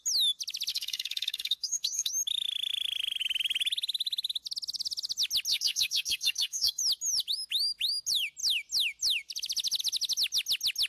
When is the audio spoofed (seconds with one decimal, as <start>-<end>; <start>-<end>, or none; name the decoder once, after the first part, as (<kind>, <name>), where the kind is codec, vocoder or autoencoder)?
0.7-2.1 (codec, SNAC); 5.5-6.8